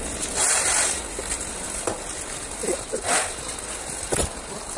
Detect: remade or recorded recorded